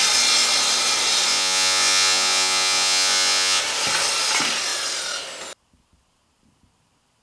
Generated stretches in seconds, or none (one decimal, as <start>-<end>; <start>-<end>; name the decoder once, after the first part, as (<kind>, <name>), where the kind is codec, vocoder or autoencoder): 1.3-3.6 (vocoder, Vocos)